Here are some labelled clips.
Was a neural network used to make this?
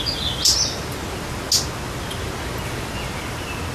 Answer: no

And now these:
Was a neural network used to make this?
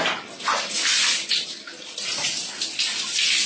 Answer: no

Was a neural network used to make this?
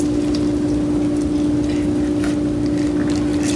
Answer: no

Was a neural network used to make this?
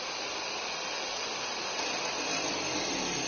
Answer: no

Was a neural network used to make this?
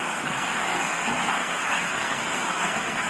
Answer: yes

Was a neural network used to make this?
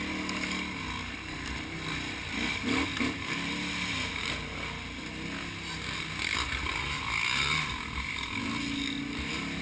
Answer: no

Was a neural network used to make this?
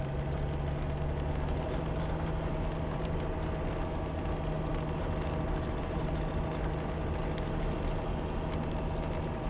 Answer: no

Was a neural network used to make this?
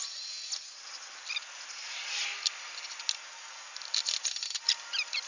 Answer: no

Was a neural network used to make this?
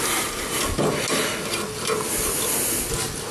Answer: no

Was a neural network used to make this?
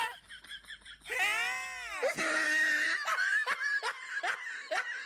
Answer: no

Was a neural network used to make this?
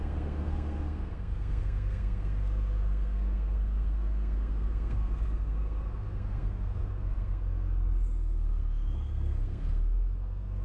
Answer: yes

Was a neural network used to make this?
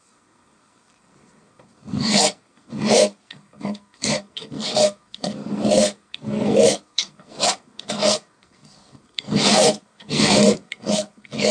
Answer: yes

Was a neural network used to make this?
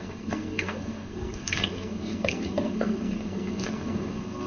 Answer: yes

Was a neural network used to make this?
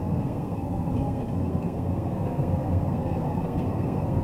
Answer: yes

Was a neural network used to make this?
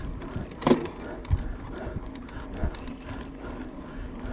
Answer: no